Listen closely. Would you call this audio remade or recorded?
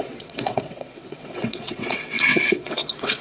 remade